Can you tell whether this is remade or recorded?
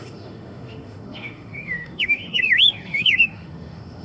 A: remade